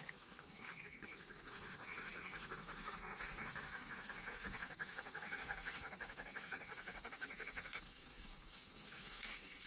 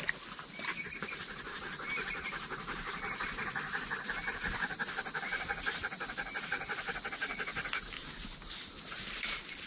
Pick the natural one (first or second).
second